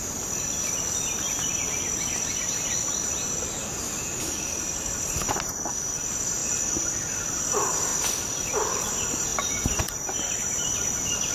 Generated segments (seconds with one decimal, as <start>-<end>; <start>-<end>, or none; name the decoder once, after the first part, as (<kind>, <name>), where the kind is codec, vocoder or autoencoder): 0.0-1.5 (vocoder, BigVGAN v2); 5.8-6.4; 7.1-7.9; 8.4-11.3